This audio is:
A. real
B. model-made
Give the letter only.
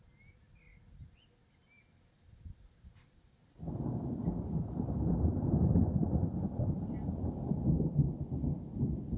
A